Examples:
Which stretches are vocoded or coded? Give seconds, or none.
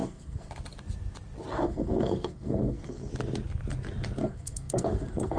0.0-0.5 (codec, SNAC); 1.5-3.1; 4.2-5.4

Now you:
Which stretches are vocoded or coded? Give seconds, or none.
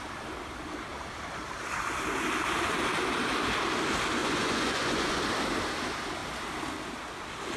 4.2-5.2 (vocoder, Vocos)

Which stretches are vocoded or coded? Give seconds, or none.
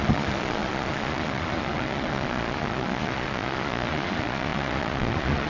0.0-5.5 (vocoder, Vocos)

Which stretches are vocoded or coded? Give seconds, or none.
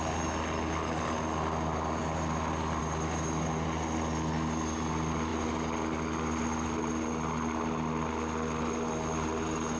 none